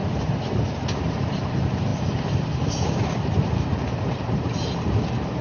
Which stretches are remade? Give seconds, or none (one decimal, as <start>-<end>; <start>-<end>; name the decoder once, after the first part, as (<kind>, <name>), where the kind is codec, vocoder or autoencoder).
0.0-5.4 (vocoder, BigVGAN v2)